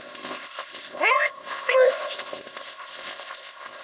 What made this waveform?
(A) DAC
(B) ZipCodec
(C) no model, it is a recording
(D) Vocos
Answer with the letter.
B